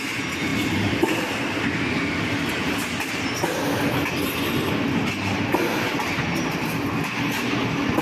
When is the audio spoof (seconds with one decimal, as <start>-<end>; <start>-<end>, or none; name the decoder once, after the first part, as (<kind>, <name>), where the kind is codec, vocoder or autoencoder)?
none